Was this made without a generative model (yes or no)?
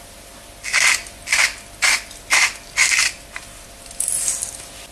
yes